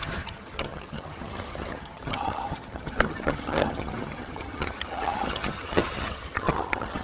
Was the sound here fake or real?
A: fake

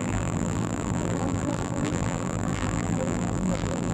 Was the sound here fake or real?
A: fake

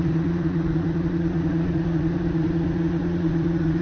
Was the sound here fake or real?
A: fake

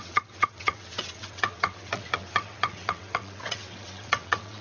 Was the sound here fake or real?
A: fake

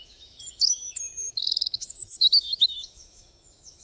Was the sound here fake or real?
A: fake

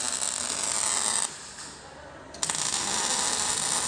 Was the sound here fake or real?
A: real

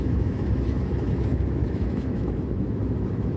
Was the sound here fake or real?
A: fake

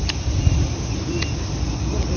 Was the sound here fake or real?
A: real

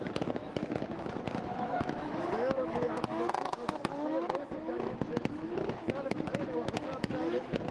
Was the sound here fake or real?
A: fake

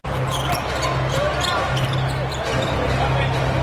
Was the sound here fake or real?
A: real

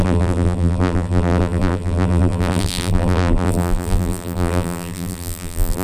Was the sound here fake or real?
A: fake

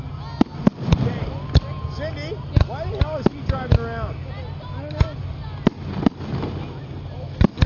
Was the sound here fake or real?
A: real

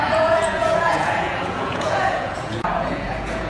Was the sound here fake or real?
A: fake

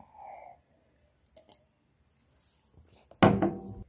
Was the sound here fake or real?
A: real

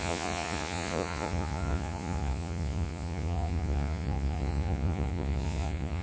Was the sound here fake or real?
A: fake